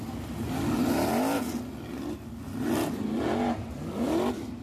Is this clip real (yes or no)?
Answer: yes